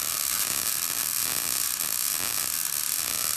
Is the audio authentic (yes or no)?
yes